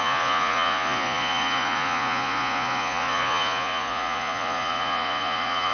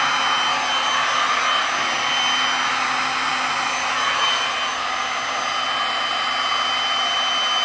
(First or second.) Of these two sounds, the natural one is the second